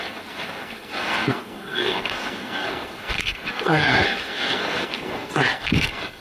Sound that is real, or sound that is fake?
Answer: fake